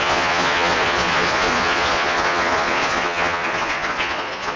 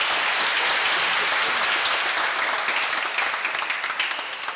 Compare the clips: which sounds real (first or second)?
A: second